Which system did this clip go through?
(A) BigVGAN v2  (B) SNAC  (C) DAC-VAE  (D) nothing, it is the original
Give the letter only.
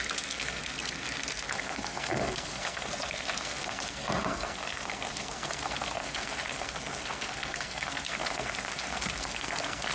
B